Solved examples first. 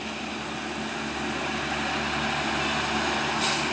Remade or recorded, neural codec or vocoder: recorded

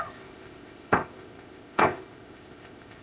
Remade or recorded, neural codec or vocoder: remade, codec, ZipCodec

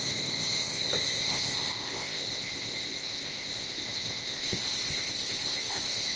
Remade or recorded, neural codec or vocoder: remade, codec, ZipCodec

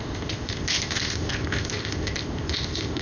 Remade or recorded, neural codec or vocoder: remade, codec, ZipCodec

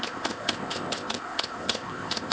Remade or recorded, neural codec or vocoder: remade, codec, ZipCodec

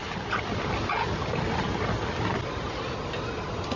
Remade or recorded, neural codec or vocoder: recorded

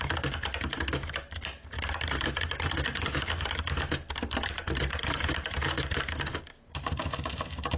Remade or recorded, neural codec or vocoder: recorded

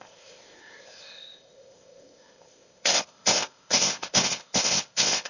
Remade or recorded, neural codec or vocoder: remade, codec, ZipCodec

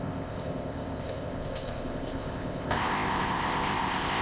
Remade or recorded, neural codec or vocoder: remade, codec, ZipCodec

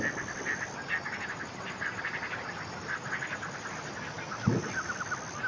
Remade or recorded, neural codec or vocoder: recorded